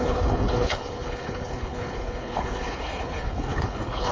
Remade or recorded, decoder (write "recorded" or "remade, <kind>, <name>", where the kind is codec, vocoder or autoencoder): remade, codec, HILCodec